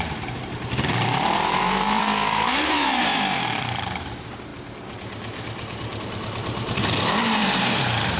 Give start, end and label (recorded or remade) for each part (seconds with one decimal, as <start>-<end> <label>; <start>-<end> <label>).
0.0-3.1 remade; 3.1-3.6 recorded; 3.6-4.5 remade; 4.5-6.0 recorded; 6.0-8.2 remade